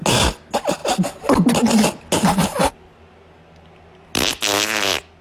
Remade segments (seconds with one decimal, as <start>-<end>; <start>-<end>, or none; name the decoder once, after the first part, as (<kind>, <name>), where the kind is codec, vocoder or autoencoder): none